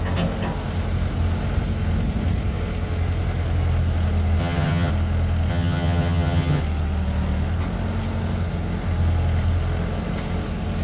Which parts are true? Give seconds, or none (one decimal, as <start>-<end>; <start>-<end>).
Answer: 0.0-4.4; 4.9-5.5; 6.6-10.8